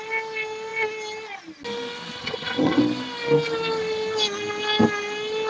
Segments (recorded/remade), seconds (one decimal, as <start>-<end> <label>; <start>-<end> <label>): 0.0-2.2 recorded; 2.2-2.8 remade; 2.8-5.5 recorded